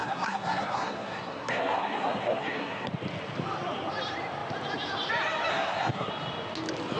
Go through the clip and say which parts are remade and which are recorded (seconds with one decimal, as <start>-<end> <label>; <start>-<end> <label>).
0.0-2.9 remade; 2.9-5.5 recorded; 5.5-6.1 remade; 6.1-7.0 recorded

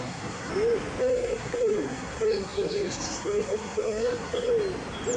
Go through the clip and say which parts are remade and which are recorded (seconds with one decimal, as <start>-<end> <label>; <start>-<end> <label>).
0.0-0.5 remade; 0.5-1.0 recorded; 1.0-4.5 remade; 4.5-5.2 recorded

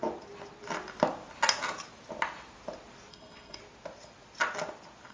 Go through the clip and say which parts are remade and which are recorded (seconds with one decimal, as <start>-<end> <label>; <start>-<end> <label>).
0.0-3.1 recorded; 3.1-3.6 remade; 3.6-5.1 recorded

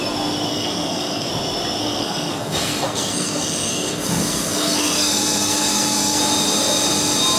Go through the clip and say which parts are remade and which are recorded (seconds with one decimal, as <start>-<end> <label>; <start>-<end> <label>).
0.0-0.5 recorded; 0.5-1.3 remade; 1.3-1.8 recorded; 1.8-6.2 remade; 6.2-7.4 recorded

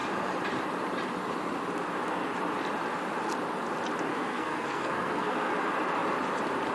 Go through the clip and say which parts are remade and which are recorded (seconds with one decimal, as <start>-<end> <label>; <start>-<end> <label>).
0.0-4.1 recorded; 4.1-5.5 remade; 5.5-6.7 recorded

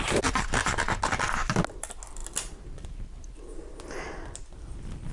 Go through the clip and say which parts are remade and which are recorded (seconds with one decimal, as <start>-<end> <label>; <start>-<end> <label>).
0.0-5.1 recorded

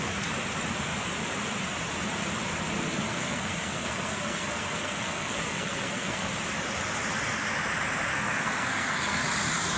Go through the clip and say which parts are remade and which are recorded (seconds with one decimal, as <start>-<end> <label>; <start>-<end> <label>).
0.0-3.1 recorded; 3.1-6.3 remade; 6.3-8.1 recorded; 8.1-9.2 remade; 9.2-9.8 recorded

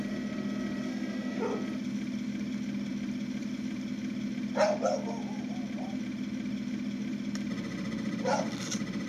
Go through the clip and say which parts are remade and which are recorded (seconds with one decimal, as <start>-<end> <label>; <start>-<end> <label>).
0.0-0.9 recorded; 0.9-1.4 remade; 1.4-9.1 recorded